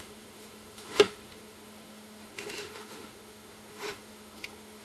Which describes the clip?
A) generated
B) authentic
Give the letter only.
A